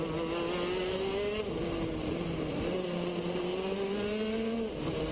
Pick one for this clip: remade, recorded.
recorded